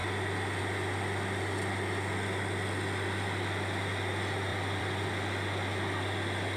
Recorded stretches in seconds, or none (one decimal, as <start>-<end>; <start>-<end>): 0.0-4.5; 5.1-6.6